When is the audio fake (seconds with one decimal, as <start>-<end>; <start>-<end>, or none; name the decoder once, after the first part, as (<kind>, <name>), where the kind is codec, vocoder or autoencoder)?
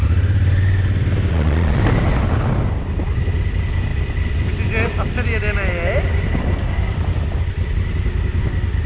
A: 1.3-1.8 (vocoder, Vocos)